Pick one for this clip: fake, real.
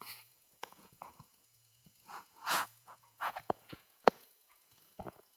fake